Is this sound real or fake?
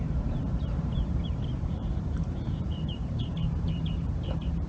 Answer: fake